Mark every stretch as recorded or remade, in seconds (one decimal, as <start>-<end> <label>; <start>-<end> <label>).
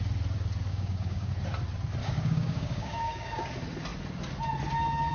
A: 0.0-0.7 recorded; 0.7-1.3 remade; 1.3-2.0 recorded; 2.0-3.5 remade; 3.5-5.1 recorded